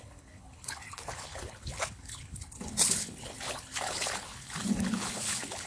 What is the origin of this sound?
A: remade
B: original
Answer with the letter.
A